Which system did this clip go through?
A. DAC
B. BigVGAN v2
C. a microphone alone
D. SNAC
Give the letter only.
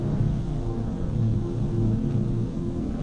D